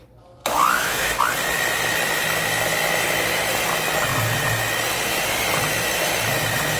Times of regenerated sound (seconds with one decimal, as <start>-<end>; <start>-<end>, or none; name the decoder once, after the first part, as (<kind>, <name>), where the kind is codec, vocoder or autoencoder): 0.4-1.2 (autoencoder, DAC-VAE)